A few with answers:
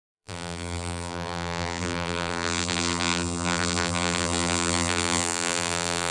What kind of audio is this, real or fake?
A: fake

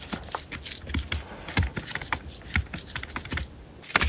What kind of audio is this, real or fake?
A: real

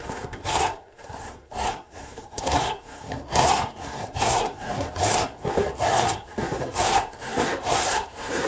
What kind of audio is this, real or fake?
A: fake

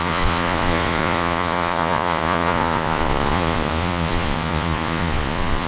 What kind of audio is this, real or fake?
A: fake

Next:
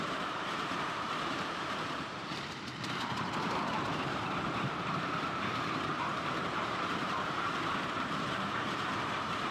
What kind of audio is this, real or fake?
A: fake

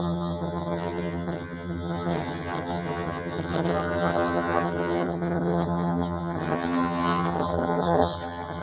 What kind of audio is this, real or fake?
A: fake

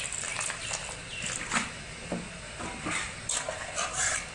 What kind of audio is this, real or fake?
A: real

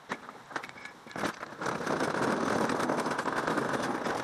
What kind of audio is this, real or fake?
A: real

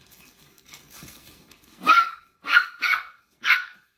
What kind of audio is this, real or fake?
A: fake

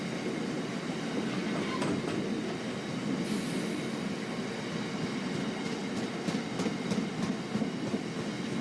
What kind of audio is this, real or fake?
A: real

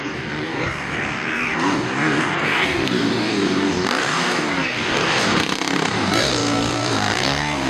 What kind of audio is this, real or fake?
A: fake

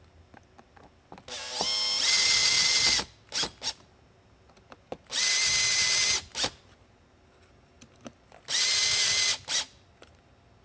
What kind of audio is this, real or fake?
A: real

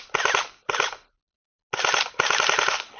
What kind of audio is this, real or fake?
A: real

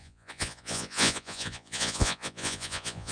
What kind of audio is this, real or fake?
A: fake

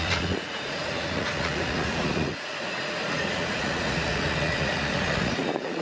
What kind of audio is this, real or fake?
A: fake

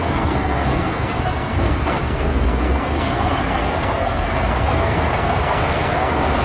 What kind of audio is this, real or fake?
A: fake